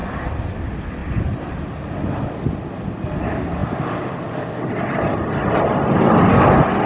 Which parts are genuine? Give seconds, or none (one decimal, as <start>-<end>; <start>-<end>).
0.0-6.9